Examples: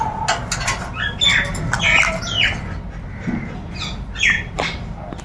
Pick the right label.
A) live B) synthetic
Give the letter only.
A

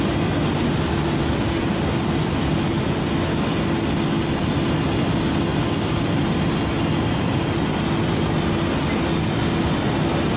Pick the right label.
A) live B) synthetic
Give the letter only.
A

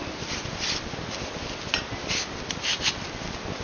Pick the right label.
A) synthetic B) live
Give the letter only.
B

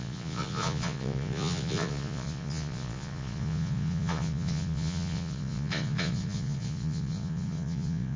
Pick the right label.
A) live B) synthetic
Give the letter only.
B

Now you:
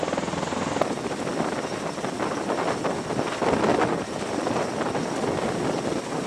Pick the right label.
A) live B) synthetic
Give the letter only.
A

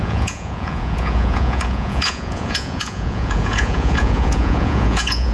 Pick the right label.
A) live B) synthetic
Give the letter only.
B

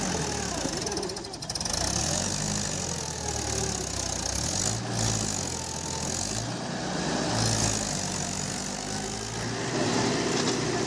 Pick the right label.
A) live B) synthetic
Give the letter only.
A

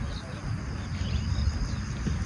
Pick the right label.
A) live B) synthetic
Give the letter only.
A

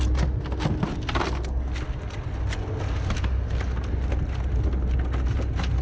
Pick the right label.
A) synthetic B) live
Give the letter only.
B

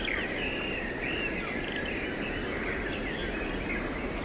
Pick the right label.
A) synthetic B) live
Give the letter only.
B